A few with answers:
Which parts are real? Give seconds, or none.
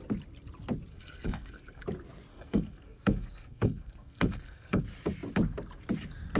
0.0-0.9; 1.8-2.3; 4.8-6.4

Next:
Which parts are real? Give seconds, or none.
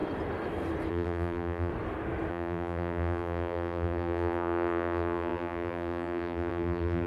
0.0-0.9; 1.7-2.3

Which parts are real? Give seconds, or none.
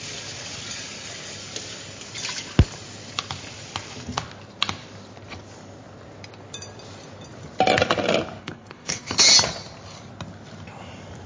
0.0-8.4; 9.1-11.3